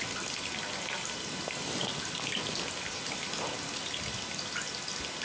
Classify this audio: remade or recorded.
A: recorded